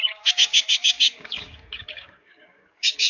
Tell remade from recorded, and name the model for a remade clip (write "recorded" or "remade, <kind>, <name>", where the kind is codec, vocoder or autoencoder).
remade, codec, DAC